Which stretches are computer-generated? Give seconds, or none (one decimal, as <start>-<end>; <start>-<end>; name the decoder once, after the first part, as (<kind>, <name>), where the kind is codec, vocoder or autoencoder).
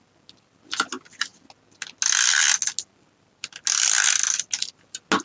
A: none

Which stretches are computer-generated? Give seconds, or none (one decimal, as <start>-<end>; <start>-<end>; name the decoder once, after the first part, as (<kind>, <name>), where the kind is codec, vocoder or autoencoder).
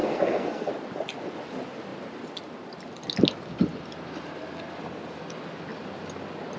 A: 0.0-0.7 (codec, SNAC)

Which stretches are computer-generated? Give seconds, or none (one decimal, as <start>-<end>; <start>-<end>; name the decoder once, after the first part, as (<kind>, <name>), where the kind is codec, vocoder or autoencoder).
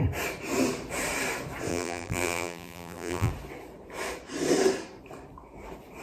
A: 1.7-3.3 (vocoder, BigVGAN v2)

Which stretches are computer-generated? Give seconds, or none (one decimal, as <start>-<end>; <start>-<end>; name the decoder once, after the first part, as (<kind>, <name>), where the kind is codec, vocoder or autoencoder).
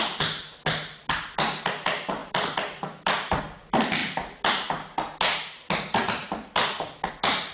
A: 2.2-3.4 (vocoder, BigVGAN v2)